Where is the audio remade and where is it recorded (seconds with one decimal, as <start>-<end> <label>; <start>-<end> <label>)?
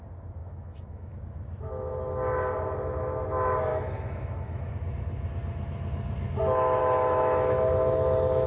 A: 0.0-0.4 recorded; 0.4-1.1 remade; 1.1-3.7 recorded; 3.7-4.7 remade; 4.7-6.8 recorded; 6.8-8.5 remade